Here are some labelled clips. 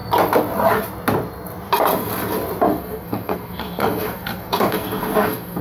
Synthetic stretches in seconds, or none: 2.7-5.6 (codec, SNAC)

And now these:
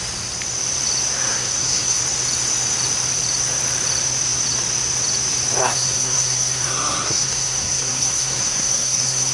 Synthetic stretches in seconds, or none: 1.3-2.0 (codec, SNAC); 5.6-9.3

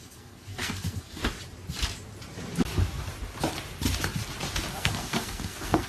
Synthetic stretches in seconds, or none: 0.0-1.2 (codec, SNAC); 4.7-5.9

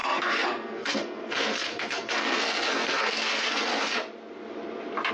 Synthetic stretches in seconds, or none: 0.0-3.7 (codec, SNAC)

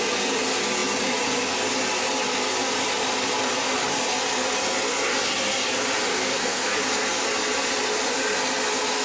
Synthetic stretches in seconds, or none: 6.1-6.8 (codec, SNAC)

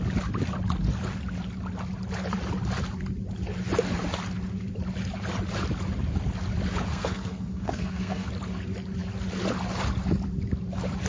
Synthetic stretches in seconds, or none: 6.9-8.3 (codec, SNAC)